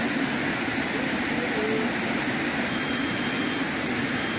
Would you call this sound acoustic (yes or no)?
yes